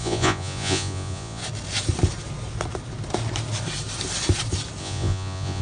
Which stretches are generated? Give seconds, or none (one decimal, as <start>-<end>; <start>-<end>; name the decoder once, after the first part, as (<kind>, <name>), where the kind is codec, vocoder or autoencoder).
0.0-1.4 (vocoder, Vocos); 4.8-5.6